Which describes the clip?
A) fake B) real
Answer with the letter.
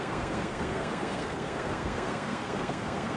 A